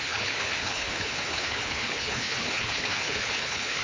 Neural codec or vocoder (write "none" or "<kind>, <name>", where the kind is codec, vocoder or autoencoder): codec, HILCodec